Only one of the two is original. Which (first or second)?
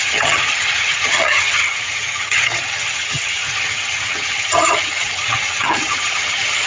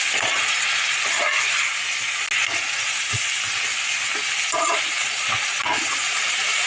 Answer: second